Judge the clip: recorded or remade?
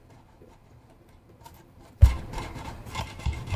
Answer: remade